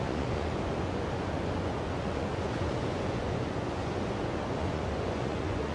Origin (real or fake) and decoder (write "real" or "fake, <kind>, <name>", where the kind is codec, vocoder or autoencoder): fake, vocoder, Vocos